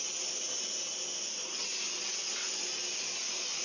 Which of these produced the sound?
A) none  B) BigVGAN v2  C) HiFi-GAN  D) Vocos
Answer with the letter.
A